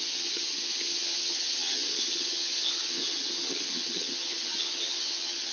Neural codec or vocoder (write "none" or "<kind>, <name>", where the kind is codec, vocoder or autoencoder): vocoder, HiFi-GAN